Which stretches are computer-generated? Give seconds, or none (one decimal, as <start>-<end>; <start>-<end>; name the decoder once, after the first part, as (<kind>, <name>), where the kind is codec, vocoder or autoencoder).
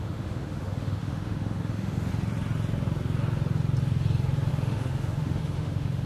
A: 0.0-2.1 (autoencoder, DAC-VAE); 4.5-6.1